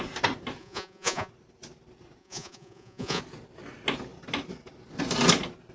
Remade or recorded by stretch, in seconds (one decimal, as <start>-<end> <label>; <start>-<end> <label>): 0.0-0.6 recorded; 0.6-1.3 remade; 1.3-2.2 recorded; 2.2-3.2 remade; 3.2-5.7 recorded